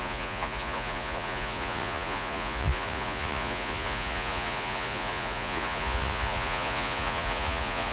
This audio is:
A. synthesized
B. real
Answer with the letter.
A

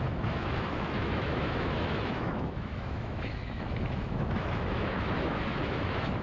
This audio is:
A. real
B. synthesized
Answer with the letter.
B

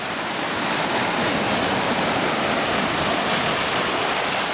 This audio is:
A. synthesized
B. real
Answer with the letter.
B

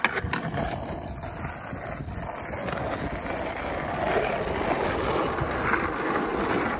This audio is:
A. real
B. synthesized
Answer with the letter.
A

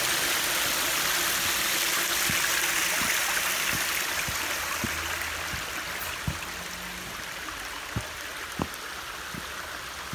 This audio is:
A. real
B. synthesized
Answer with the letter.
A